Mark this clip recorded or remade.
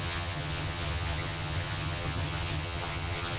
remade